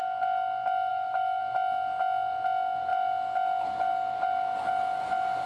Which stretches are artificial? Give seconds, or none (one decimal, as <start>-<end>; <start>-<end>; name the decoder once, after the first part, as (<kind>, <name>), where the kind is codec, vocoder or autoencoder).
0.9-1.4 (autoencoder, DAC-VAE)